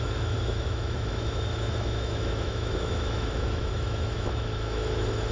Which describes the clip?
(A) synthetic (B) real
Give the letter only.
A